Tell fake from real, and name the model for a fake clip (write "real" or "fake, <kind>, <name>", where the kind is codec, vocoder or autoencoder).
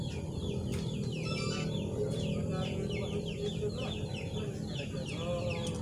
real